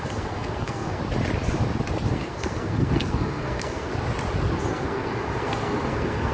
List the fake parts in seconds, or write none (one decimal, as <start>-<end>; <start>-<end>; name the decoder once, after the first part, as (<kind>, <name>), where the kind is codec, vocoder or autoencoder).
0.0-1.0 (codec, SNAC); 2.1-3.9; 4.7-6.3

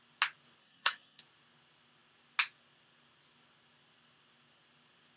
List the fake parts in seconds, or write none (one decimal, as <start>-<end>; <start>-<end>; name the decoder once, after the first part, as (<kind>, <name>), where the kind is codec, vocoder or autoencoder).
0.6-1.2 (codec, SNAC)

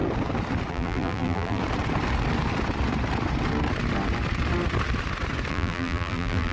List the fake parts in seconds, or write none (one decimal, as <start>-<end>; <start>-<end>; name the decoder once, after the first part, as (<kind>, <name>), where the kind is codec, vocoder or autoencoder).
0.7-1.6 (vocoder, BigVGAN v2); 5.5-6.5

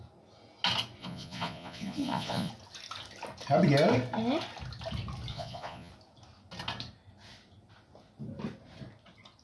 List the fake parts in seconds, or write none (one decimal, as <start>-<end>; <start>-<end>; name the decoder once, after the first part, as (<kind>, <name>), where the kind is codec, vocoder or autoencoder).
1.0-2.5 (vocoder, Vocos); 5.3-5.9

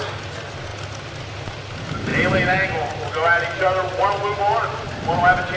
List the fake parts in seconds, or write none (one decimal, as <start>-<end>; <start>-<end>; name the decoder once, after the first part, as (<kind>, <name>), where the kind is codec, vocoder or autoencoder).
none

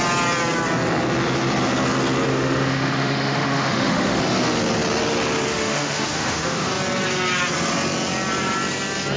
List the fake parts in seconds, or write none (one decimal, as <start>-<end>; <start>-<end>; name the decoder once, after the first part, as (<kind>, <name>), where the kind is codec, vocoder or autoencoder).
2.3-4.2 (autoencoder, DAC-VAE); 5.5-6.7